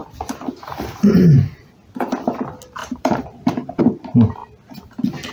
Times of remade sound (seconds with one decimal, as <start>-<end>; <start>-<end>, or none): 2.8-3.8